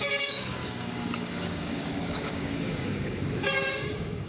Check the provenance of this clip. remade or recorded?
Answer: remade